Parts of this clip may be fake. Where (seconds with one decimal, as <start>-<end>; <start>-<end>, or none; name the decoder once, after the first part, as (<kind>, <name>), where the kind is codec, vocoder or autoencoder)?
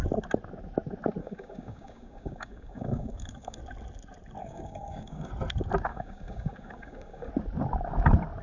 1.2-3.6 (codec, DAC); 4.4-5.3; 5.9-7.3